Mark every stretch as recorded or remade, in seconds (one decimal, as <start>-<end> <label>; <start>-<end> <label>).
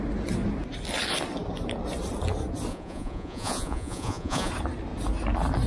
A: 0.0-2.7 recorded; 2.7-4.5 remade; 4.5-5.7 recorded